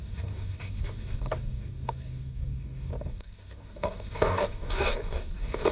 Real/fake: fake